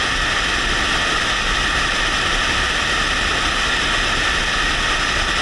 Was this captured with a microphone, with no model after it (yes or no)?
yes